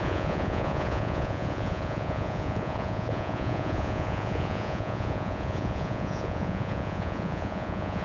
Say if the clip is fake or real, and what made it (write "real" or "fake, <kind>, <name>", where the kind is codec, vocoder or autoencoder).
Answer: fake, vocoder, Vocos